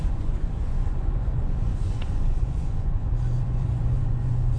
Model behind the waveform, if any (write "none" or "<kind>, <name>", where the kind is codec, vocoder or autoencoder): vocoder, Vocos